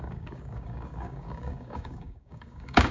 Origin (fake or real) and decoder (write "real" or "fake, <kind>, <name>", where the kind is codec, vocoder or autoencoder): fake, codec, DAC